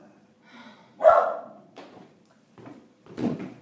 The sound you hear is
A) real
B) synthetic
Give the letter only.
B